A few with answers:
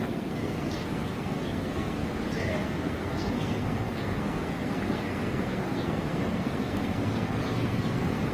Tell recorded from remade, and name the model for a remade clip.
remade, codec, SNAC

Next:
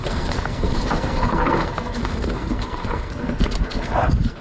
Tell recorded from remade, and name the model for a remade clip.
remade, codec, SNAC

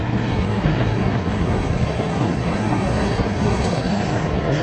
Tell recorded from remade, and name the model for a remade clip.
remade, codec, SNAC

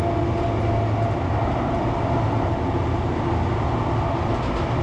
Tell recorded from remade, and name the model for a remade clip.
recorded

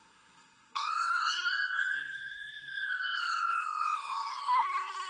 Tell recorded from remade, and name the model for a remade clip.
remade, codec, SNAC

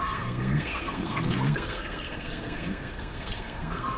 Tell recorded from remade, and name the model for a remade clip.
remade, codec, SNAC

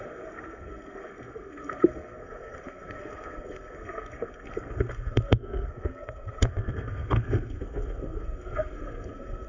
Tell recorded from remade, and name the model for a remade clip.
remade, codec, SNAC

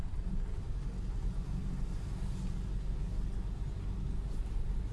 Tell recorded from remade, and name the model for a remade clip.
recorded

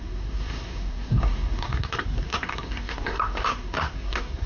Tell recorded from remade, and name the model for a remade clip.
remade, codec, SNAC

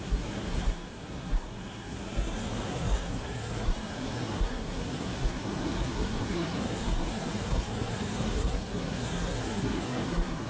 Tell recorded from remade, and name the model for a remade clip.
remade, codec, SNAC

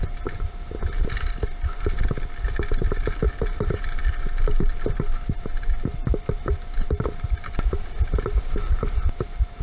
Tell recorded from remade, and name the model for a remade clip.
recorded